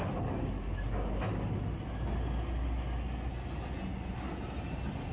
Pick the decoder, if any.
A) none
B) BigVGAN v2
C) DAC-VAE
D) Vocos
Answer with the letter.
A